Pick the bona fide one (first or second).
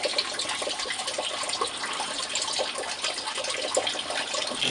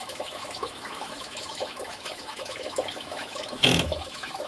first